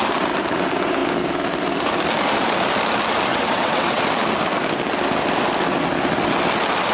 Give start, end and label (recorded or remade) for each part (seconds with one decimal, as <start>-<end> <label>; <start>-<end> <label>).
0.0-3.3 recorded; 3.3-4.0 remade; 4.0-6.9 recorded